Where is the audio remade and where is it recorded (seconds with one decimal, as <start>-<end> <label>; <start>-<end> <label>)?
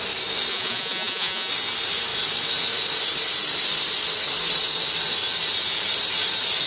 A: 0.0-0.5 recorded; 0.5-1.5 remade; 1.5-6.7 recorded